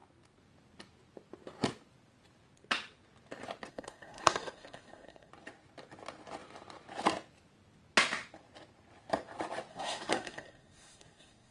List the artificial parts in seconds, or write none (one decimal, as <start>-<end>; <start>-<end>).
3.7-5.3; 9.7-11.5

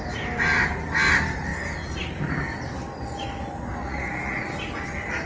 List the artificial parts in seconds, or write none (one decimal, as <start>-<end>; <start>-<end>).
3.8-4.4

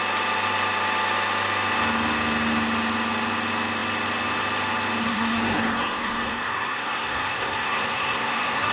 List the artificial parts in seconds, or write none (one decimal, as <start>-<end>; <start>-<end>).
5.0-8.7